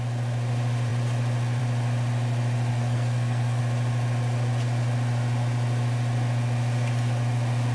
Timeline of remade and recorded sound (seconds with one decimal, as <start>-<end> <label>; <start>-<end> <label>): 0.0-2.7 recorded; 2.7-3.6 remade; 3.6-7.7 recorded